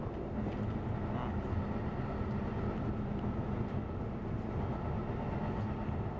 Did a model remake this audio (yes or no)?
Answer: no